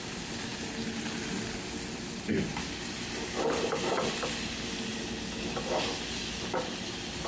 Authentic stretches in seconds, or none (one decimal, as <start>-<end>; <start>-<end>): 0.0-7.3